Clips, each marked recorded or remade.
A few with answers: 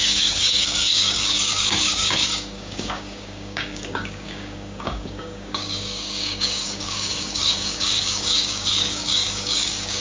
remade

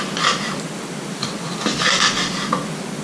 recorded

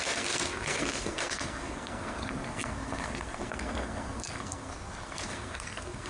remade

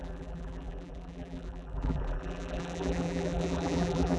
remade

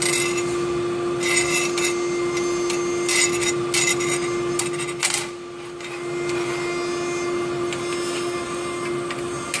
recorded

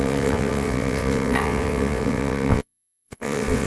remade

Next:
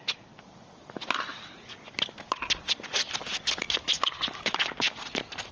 recorded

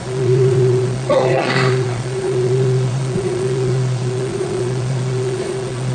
remade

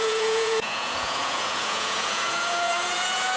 remade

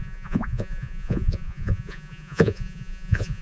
remade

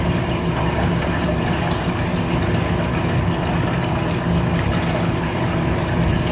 recorded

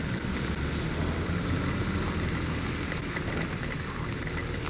recorded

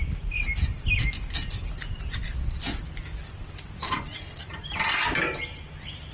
recorded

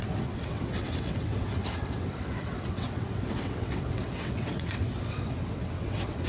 remade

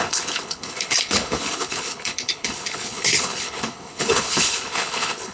remade